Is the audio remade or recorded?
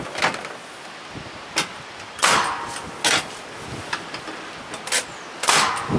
recorded